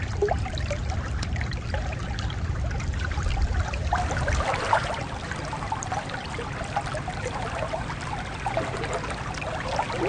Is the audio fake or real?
fake